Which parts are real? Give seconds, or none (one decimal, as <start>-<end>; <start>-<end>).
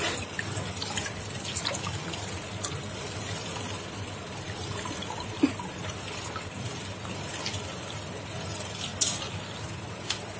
0.0-10.4